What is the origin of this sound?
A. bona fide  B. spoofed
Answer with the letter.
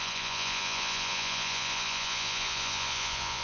B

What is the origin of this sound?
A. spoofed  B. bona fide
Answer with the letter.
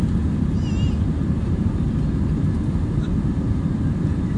B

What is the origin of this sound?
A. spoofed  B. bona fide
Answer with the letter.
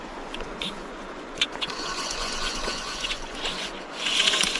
A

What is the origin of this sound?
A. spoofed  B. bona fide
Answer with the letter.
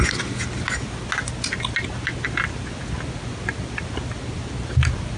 B